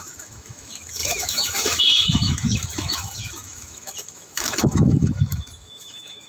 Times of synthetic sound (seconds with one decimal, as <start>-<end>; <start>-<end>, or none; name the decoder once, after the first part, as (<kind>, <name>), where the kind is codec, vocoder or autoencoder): 0.0-6.3 (autoencoder, DAC-VAE)